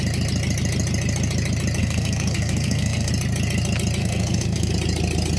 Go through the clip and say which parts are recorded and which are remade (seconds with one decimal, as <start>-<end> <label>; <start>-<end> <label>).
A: 0.0-1.8 recorded; 1.8-3.1 remade; 3.1-4.0 recorded; 4.0-4.7 remade; 4.7-5.4 recorded